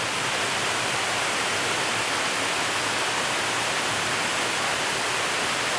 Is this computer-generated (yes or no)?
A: no